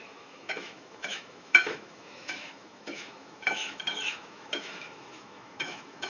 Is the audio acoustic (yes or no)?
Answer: no